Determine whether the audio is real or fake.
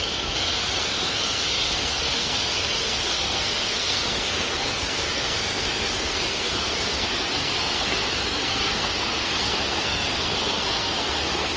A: fake